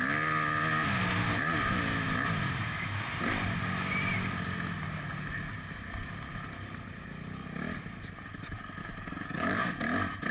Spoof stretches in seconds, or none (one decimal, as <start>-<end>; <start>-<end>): 8.8-9.5